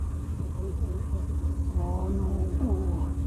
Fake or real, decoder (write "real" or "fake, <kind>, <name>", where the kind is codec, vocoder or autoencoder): real